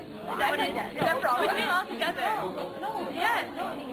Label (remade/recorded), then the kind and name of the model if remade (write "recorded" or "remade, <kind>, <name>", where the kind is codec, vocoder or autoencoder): recorded